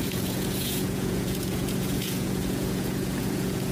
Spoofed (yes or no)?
yes